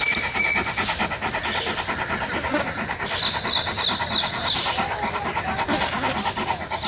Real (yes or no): yes